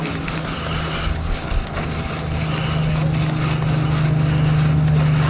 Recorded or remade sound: recorded